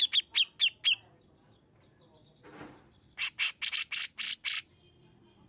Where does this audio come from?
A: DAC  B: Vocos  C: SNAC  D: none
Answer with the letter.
D